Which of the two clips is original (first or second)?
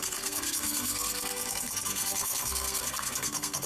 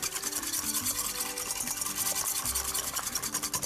second